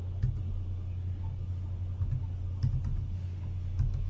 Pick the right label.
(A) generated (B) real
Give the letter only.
B